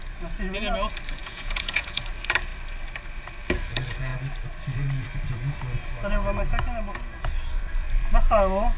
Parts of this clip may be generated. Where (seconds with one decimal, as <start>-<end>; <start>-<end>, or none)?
1.2-2.0